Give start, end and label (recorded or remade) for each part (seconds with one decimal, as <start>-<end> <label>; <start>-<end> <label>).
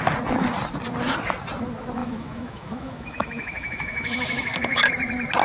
0.0-2.0 recorded; 2.0-4.9 remade; 4.9-5.4 recorded